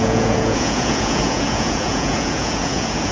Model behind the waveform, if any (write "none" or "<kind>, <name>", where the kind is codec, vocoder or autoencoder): vocoder, Vocos